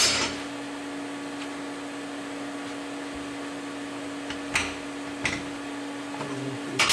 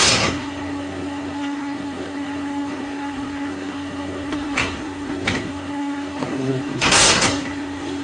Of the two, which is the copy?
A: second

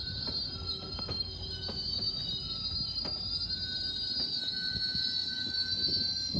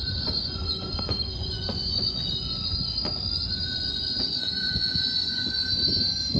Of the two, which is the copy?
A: second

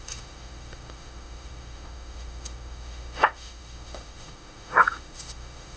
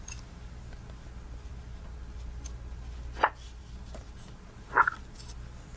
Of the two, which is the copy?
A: first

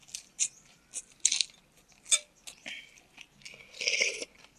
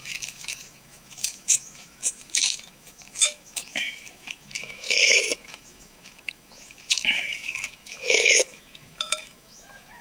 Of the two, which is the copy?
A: second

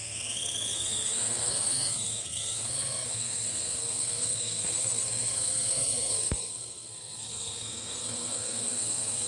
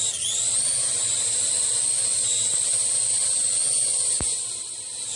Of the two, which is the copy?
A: first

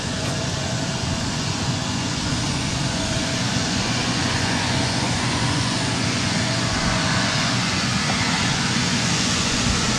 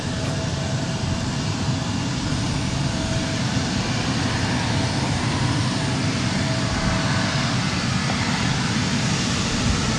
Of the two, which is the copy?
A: first